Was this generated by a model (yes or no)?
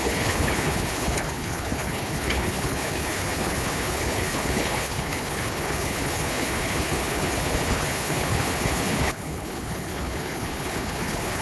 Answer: yes